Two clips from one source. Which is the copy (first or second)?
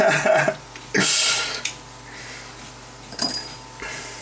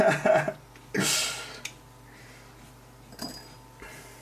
first